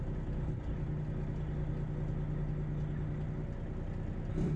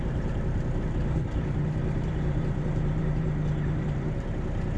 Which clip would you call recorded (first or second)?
first